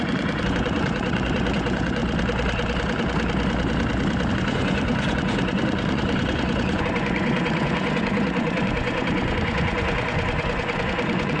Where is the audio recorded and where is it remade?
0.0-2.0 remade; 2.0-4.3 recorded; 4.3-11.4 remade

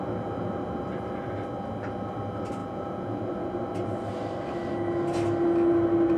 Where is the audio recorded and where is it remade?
0.0-2.6 recorded; 2.6-3.5 remade; 3.5-6.2 recorded

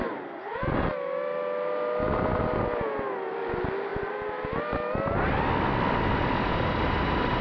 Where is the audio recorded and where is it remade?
0.0-7.4 recorded